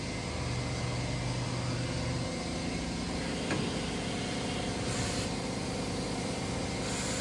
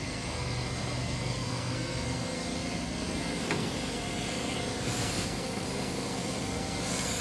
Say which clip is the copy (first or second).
second